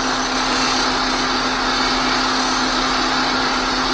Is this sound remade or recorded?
recorded